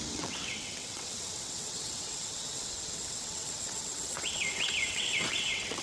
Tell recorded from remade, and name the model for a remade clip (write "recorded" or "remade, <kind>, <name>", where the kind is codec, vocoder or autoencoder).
remade, vocoder, WaveNeXt